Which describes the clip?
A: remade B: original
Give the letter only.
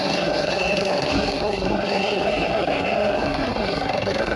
A